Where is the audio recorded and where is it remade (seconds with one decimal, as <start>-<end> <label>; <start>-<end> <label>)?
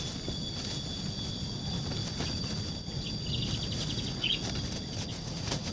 0.0-3.8 recorded; 3.8-4.4 remade; 4.4-5.1 recorded; 5.1-5.7 remade